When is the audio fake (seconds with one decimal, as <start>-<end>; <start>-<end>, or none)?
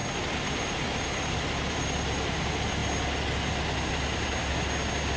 0.0-2.3